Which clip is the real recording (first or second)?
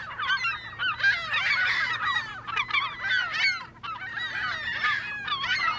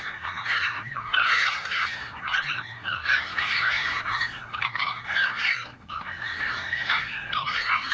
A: first